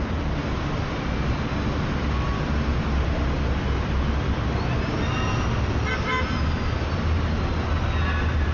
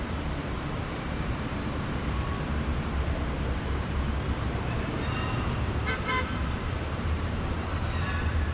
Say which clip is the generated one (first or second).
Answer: second